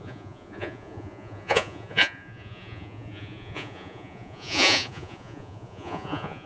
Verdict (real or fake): fake